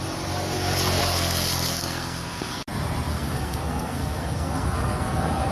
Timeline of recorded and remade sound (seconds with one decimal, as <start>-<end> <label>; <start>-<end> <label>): 0.0-1.0 recorded; 1.0-2.6 remade; 2.6-3.1 recorded; 3.1-5.5 remade